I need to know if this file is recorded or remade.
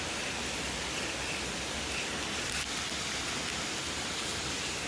recorded